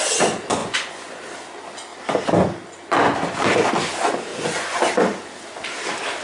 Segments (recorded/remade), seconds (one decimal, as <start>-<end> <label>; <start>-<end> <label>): 0.0-0.6 recorded; 0.6-1.2 remade; 1.2-4.3 recorded; 4.3-4.8 remade; 4.8-6.2 recorded